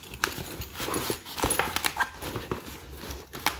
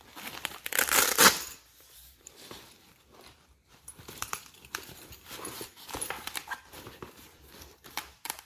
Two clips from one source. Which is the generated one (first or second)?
second